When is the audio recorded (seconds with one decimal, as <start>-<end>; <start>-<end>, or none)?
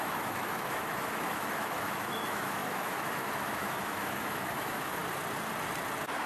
5.0-6.3